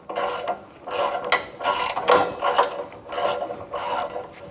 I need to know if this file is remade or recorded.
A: recorded